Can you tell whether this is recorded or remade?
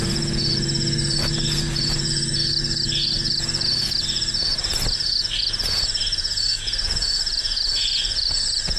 remade